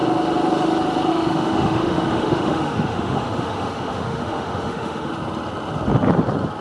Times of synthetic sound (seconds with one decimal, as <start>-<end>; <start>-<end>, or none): 1.1-5.1